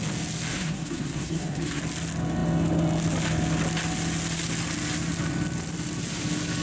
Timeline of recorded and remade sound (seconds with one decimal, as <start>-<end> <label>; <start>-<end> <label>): 0.0-0.5 recorded; 0.5-1.8 remade; 1.8-6.6 recorded